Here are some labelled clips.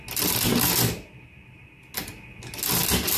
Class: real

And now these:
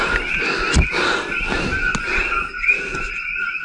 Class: real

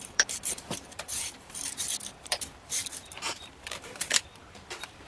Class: fake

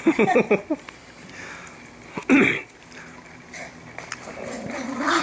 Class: fake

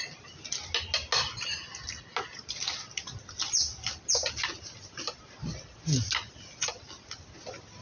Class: real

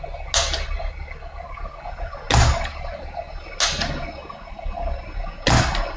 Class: real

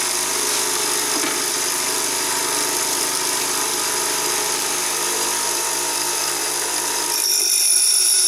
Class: fake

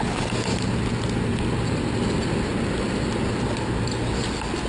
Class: real